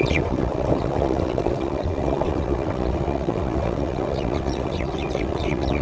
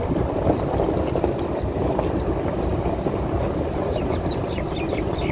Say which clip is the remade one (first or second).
first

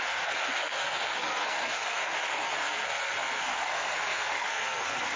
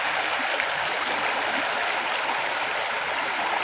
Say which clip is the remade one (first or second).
first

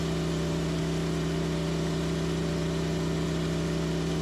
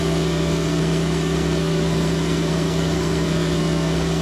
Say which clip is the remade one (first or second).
second